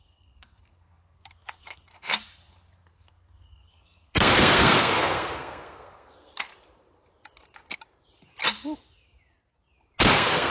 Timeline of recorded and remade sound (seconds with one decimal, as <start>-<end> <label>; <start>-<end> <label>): 0.0-1.9 remade; 1.9-2.9 recorded; 2.9-6.5 remade; 6.5-10.1 recorded; 10.1-10.5 remade